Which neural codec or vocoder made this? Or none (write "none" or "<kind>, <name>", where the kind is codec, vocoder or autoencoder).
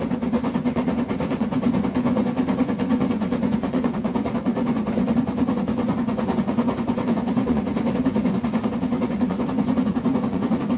vocoder, Vocos